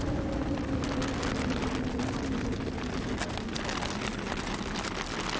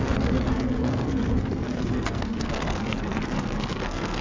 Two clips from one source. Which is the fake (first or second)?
second